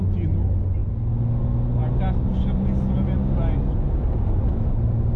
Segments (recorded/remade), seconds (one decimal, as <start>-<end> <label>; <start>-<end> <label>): 0.0-5.2 recorded